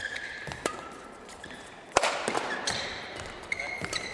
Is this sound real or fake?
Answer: fake